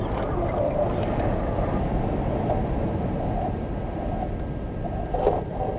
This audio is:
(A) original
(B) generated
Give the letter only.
A